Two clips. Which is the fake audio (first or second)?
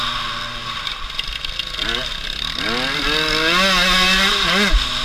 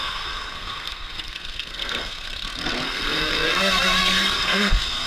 second